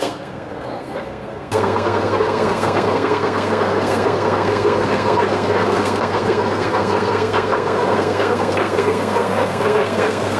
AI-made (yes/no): yes